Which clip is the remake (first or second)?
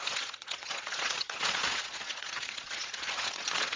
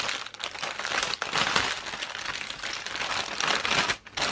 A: first